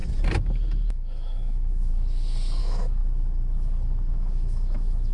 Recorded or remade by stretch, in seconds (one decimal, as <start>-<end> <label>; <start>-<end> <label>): 0.0-0.9 recorded; 0.9-1.9 remade; 1.9-2.6 recorded; 2.6-3.0 remade; 3.0-4.1 recorded; 4.1-5.1 remade